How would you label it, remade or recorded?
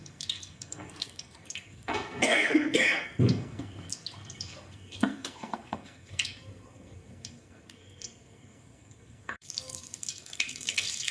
remade